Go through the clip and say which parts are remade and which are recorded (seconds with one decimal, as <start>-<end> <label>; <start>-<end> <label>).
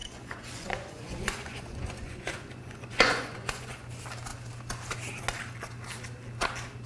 0.0-3.9 remade; 3.9-6.9 recorded